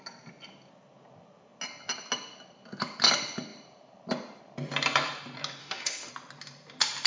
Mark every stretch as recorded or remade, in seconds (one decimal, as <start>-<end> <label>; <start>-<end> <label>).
0.0-5.6 recorded; 5.6-6.1 remade; 6.1-7.1 recorded

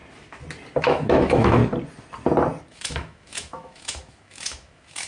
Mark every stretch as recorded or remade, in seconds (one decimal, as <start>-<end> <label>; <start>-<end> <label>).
0.0-0.8 recorded; 0.8-1.6 remade; 1.6-2.7 recorded; 2.7-5.1 remade

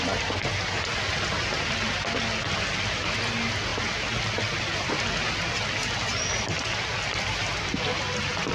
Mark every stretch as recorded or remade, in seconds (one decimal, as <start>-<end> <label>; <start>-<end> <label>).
0.0-8.5 recorded

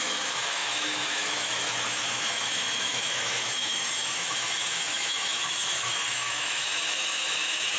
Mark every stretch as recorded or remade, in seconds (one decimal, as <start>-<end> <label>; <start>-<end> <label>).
0.0-7.8 remade

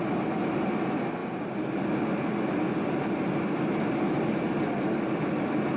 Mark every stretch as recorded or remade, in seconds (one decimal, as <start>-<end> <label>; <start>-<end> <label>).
0.0-5.8 recorded

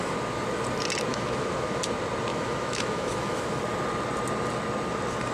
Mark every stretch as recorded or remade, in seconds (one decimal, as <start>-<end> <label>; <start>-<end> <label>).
0.0-1.1 recorded; 1.1-1.8 remade; 1.8-2.3 recorded; 2.3-3.6 remade; 3.6-5.3 recorded